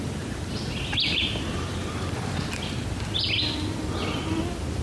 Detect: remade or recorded remade